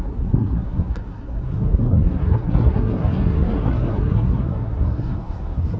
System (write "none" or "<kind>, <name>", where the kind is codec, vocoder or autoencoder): codec, SNAC